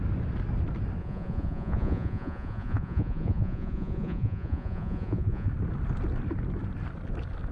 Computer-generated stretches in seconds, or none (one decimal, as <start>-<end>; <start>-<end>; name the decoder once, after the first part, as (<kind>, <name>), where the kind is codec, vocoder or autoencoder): 1.0-5.5 (vocoder, Vocos)